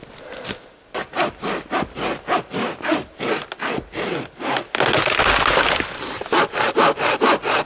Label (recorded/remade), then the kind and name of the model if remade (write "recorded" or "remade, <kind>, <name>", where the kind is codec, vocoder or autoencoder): recorded